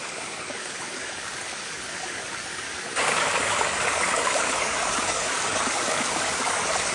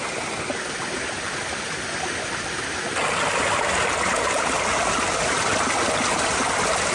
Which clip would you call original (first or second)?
second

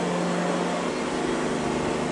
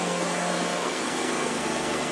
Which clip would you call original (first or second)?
first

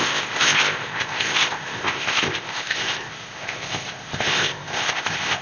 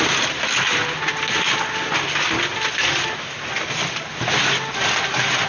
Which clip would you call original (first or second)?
second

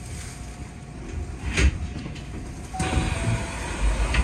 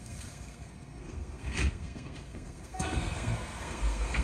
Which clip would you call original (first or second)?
first